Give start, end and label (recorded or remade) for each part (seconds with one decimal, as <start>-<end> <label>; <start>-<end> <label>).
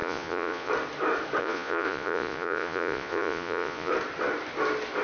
0.0-0.7 remade; 0.7-1.4 recorded; 1.4-3.9 remade; 3.9-5.0 recorded